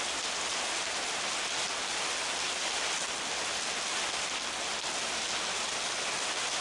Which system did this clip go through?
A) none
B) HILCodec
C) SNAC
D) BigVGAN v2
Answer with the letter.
A